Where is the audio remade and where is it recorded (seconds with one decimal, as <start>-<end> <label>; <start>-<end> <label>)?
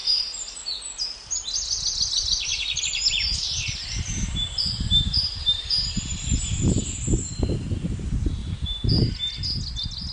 0.0-2.5 recorded; 2.5-7.1 remade; 7.1-8.4 recorded; 8.4-9.1 remade; 9.1-10.1 recorded